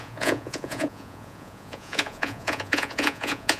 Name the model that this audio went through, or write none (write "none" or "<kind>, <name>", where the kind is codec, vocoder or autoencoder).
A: vocoder, Vocos